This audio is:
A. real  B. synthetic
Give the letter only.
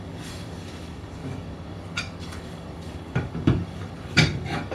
B